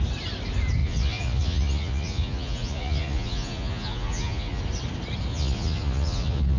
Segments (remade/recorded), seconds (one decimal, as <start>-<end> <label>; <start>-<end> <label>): 0.0-0.8 recorded; 0.8-4.6 remade; 4.6-5.3 recorded; 5.3-6.6 remade